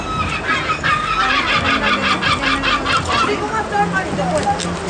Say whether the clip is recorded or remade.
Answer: recorded